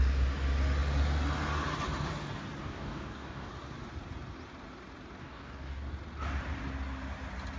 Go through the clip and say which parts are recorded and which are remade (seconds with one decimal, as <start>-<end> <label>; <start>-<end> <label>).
0.0-2.6 recorded; 2.6-3.5 remade; 3.5-5.2 recorded; 5.2-5.9 remade; 5.9-7.6 recorded